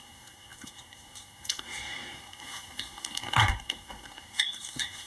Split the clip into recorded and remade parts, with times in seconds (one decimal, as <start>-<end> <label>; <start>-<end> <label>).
0.0-5.1 remade